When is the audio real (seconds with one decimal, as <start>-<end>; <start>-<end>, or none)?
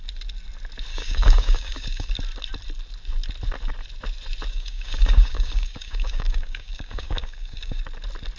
0.0-0.9; 2.1-4.5; 7.8-8.4